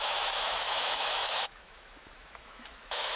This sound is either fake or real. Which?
fake